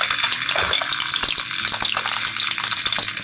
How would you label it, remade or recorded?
recorded